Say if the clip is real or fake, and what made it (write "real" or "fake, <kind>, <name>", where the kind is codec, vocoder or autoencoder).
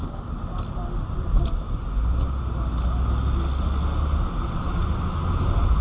real